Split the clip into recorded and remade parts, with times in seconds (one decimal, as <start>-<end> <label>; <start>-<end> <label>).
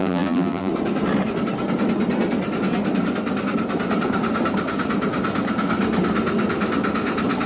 0.0-0.7 remade; 0.7-7.5 recorded